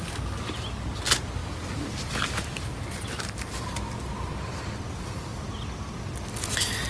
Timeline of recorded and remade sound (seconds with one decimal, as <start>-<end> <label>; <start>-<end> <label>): 0.0-1.4 recorded; 1.4-4.7 remade; 4.7-6.9 recorded